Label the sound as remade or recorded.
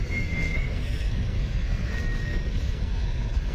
remade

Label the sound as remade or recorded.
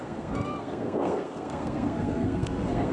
remade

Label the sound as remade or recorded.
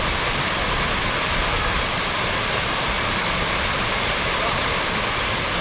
recorded